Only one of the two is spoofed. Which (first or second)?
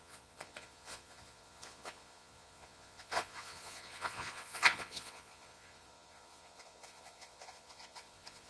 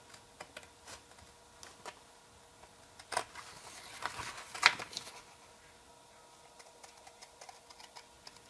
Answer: first